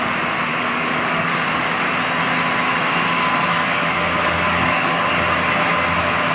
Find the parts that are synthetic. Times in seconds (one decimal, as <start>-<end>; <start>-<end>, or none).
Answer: 0.5-1.8; 3.5-5.1